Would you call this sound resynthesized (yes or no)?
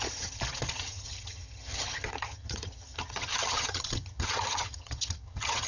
yes